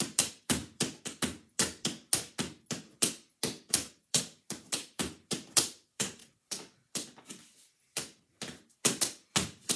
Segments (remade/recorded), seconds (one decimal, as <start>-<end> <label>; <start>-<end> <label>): 0.0-0.6 remade; 0.6-3.7 recorded; 3.7-6.2 remade; 6.2-9.8 recorded